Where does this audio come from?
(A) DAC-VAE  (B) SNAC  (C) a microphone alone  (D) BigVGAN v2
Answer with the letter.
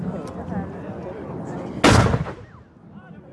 C